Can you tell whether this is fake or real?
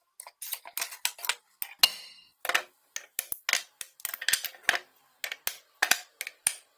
real